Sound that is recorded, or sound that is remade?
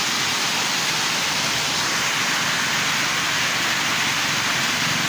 recorded